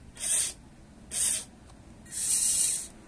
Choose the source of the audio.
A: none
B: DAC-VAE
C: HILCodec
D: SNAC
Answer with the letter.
A